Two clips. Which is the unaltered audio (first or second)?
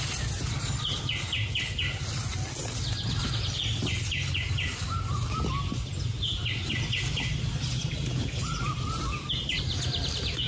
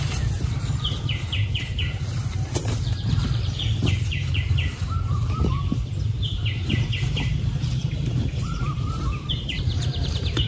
first